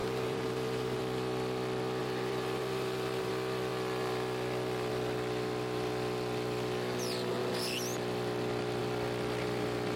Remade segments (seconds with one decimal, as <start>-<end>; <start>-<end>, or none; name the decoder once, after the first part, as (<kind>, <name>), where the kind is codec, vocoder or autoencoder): 0.0-1.0 (vocoder, BigVGAN v2); 2.0-3.3